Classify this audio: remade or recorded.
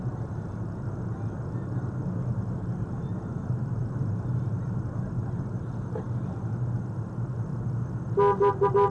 recorded